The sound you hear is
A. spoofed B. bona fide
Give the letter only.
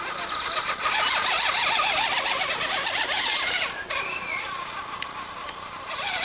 B